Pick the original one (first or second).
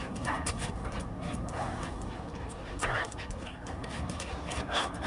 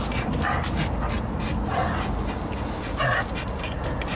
second